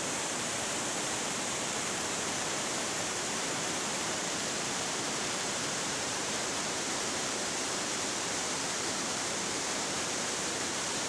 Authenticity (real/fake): fake